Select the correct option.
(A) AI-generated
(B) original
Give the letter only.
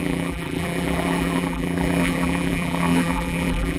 A